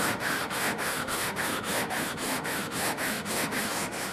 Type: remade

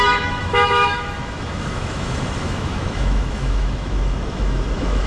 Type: remade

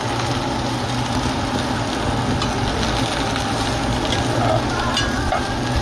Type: recorded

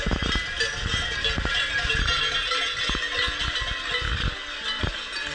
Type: recorded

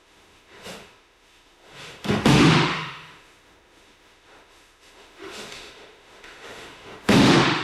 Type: remade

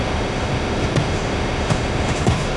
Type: remade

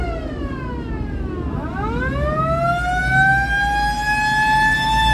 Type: recorded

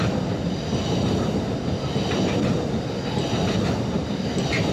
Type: recorded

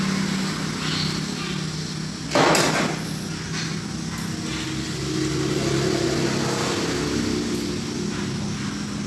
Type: recorded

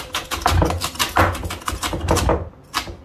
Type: recorded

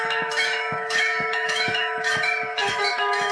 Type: remade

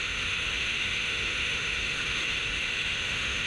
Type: remade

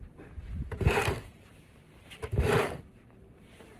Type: recorded